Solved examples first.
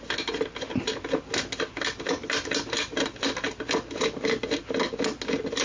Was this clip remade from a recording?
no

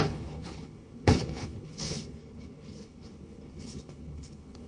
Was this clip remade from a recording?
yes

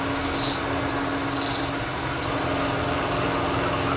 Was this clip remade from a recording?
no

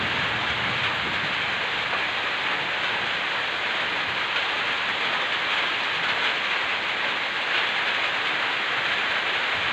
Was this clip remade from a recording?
no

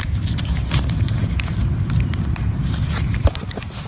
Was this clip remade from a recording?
yes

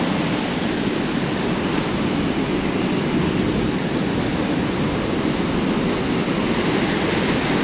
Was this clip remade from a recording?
no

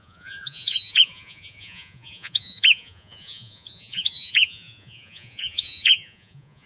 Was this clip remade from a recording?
yes